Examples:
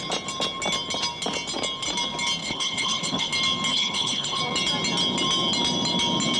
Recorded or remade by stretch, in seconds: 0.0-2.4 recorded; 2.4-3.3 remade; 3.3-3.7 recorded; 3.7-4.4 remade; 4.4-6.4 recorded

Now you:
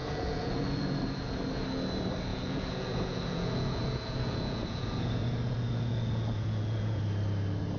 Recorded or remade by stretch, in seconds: 0.0-1.4 remade; 1.4-2.3 recorded; 2.3-7.0 remade; 7.0-7.8 recorded